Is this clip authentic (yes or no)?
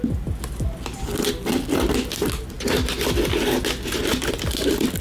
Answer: yes